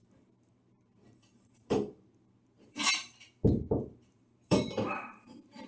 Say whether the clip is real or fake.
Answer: fake